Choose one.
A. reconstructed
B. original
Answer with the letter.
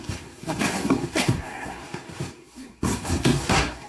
A